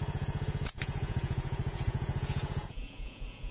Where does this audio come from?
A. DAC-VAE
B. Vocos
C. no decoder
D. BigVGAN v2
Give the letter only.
B